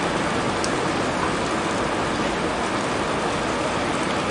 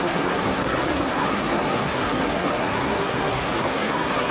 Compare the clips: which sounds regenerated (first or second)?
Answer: second